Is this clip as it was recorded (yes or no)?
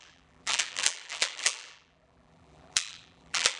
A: no